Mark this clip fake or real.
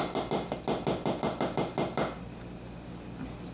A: real